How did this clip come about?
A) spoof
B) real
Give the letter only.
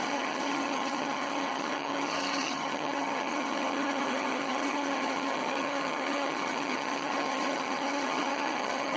A